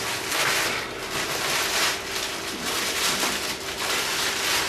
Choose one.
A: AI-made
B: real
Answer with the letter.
B